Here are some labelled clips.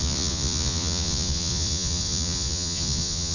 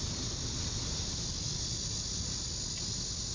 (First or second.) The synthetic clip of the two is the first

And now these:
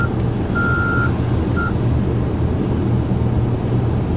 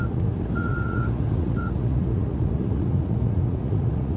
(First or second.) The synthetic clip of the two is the second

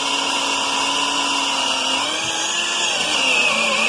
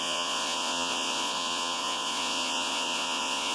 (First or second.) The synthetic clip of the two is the second